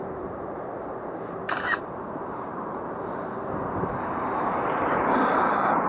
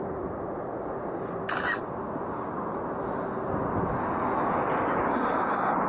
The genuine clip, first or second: second